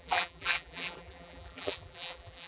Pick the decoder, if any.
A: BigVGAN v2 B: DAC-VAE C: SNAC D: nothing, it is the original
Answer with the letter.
A